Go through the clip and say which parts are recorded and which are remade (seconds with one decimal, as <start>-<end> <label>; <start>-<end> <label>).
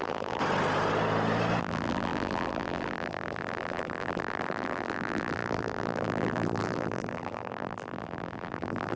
0.0-0.4 remade; 0.4-1.6 recorded; 1.6-9.0 remade